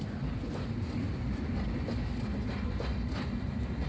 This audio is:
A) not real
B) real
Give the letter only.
B